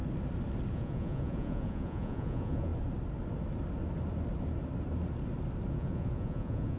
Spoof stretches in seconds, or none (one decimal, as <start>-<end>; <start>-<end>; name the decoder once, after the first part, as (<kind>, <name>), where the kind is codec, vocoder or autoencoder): 0.7-2.7 (vocoder, Vocos); 5.7-6.8